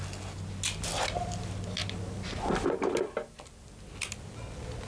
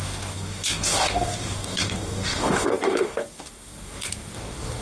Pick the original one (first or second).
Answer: first